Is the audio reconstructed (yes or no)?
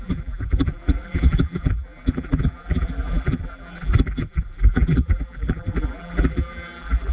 yes